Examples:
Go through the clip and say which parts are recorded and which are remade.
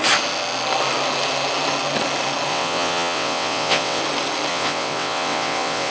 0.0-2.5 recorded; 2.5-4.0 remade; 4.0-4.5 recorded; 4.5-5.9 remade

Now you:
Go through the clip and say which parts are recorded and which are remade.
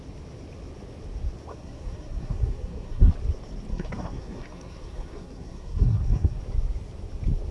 0.0-1.5 recorded; 1.5-3.1 remade; 3.1-3.7 recorded; 3.7-6.4 remade; 6.4-7.5 recorded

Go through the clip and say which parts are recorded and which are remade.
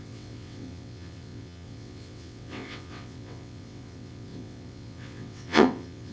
0.0-6.1 remade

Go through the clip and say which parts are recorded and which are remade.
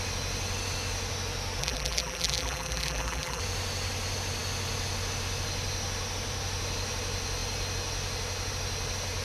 0.0-1.6 recorded; 1.6-3.4 remade; 3.4-9.2 recorded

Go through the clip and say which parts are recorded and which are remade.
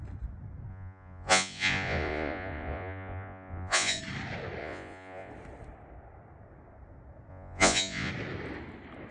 0.0-0.7 recorded; 0.7-4.0 remade; 4.0-4.6 recorded; 4.6-5.3 remade; 5.3-7.3 recorded; 7.3-8.1 remade; 8.1-9.1 recorded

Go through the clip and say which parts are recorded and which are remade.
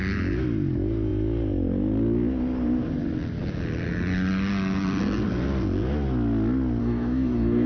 0.0-6.8 recorded; 6.8-7.7 remade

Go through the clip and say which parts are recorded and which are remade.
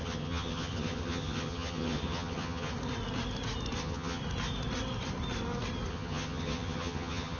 0.0-2.7 remade; 2.7-3.8 recorded; 3.8-4.2 remade; 4.2-5.9 recorded; 5.9-7.4 remade